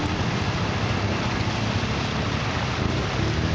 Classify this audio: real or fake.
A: real